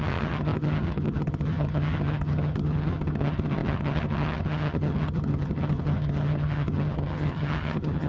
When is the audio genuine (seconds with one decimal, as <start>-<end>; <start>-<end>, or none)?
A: none